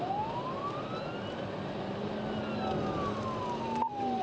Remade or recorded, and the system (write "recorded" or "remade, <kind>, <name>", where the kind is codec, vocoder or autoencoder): recorded